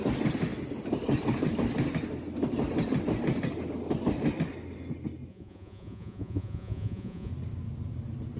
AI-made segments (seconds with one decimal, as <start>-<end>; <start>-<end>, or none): 5.3-7.3